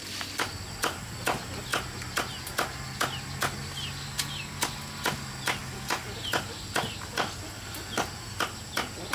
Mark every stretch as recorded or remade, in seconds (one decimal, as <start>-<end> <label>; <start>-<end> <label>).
0.0-9.1 recorded